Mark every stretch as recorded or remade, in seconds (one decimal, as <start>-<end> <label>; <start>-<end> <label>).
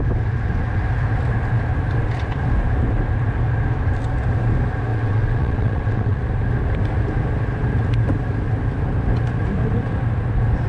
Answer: 0.0-4.9 recorded; 4.9-6.2 remade; 6.2-10.7 recorded